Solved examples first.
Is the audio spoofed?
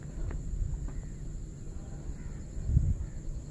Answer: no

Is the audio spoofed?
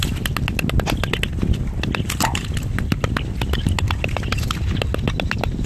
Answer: no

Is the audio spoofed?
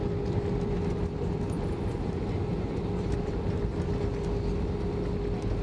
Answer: no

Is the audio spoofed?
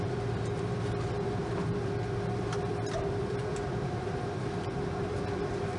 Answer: yes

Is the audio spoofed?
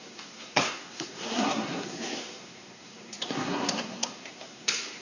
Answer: yes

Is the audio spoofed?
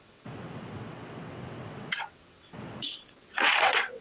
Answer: yes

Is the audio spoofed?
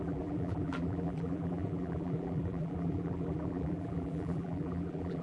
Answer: yes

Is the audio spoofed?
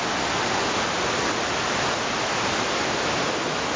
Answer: no